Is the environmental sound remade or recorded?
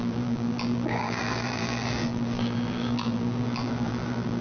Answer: remade